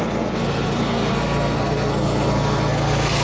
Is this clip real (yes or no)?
no